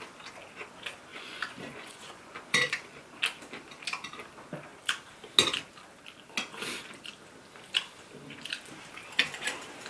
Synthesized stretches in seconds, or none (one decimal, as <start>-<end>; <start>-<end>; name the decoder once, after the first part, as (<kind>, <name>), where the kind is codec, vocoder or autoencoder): 1.1-3.1 (vocoder, Vocos)